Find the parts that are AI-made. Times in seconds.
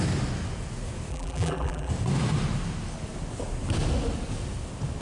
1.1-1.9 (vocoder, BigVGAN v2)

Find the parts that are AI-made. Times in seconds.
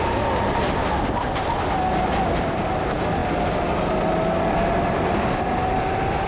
none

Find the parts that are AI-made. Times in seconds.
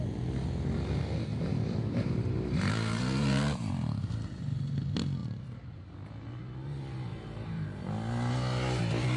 1.3-3.7 (vocoder, BigVGAN v2); 7.1-7.9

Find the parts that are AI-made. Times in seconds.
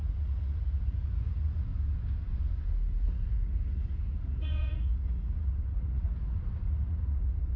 0.0-1.7 (vocoder, Vocos); 3.0-7.6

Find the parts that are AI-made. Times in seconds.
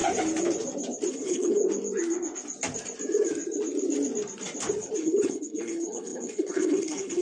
1.1-1.6 (codec, HILCodec); 5.0-7.2